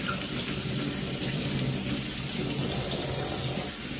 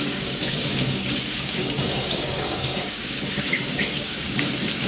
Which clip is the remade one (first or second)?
second